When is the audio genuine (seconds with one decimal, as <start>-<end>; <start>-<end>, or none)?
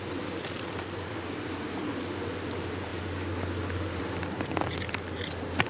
0.0-5.7